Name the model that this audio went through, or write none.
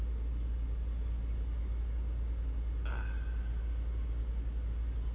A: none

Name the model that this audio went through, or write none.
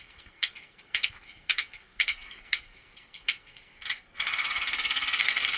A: codec, SNAC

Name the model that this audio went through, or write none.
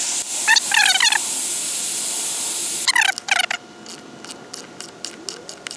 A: none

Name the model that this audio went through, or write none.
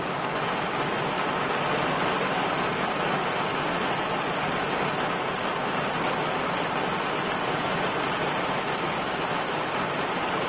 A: none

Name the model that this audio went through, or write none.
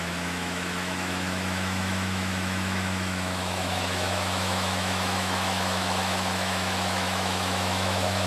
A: autoencoder, DAC-VAE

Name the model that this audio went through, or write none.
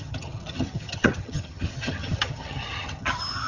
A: vocoder, HiFi-GAN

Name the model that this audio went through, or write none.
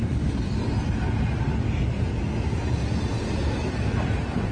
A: none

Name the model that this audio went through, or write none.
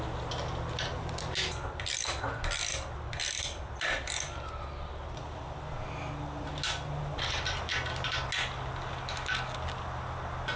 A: none